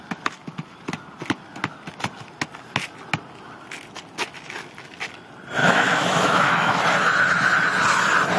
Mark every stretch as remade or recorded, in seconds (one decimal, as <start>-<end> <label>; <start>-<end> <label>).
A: 0.0-5.6 recorded; 5.6-6.8 remade; 6.8-8.4 recorded